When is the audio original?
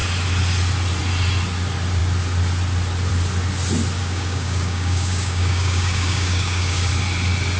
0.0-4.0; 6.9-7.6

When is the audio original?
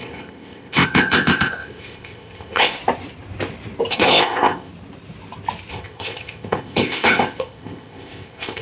2.8-3.9; 4.7-5.7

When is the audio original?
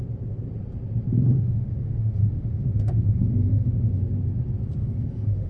0.0-1.3; 4.0-4.8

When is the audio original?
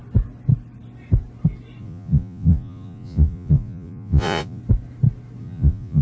0.0-1.8; 4.6-5.4